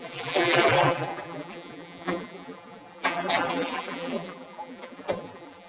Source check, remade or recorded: remade